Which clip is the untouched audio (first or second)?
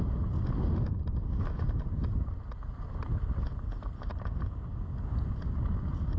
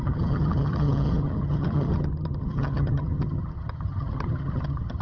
first